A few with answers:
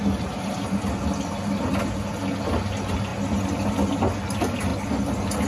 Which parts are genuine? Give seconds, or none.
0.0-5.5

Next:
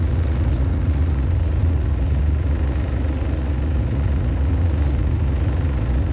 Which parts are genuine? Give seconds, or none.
none

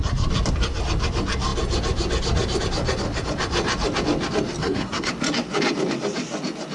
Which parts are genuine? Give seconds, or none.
0.0-4.6; 5.1-6.7

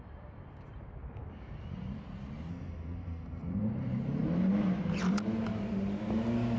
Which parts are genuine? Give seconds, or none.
0.0-2.5; 3.6-6.6

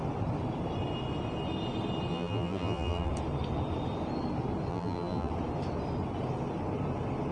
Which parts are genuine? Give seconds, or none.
0.0-2.1; 3.1-4.7; 5.3-7.3

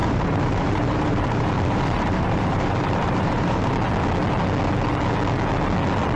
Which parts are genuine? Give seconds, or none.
3.7-6.2

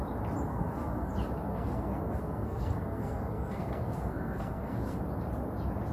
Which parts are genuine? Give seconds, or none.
0.0-0.5; 1.1-1.5; 5.0-5.9